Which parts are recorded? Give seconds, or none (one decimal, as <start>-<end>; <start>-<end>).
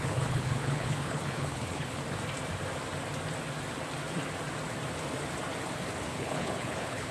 2.0-6.1